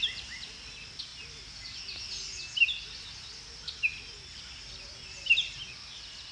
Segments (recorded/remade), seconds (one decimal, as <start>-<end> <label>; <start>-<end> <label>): 0.0-6.3 recorded